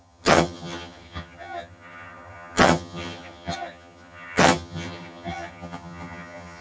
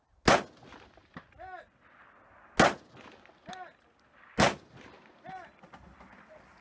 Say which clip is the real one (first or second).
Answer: second